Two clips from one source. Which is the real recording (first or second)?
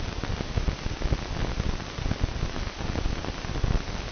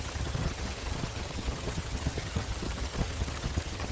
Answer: first